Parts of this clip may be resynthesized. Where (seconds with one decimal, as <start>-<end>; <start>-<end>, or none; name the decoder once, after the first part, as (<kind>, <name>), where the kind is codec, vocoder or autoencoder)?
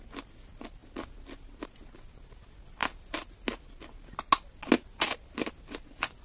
none